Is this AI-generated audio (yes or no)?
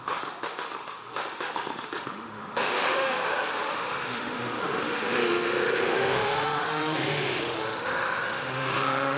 yes